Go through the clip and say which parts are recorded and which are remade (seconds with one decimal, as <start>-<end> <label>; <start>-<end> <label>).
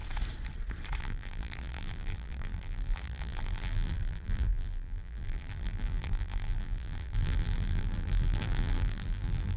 0.0-1.0 recorded; 1.0-9.6 remade